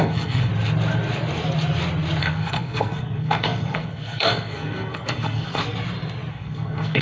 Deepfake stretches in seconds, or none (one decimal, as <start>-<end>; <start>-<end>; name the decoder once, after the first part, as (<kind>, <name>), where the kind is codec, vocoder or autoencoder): 0.0-0.5 (codec, SNAC); 2.2-5.6; 6.3-7.0